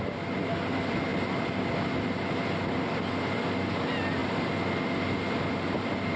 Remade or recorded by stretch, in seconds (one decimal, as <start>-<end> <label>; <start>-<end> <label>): 0.0-6.2 recorded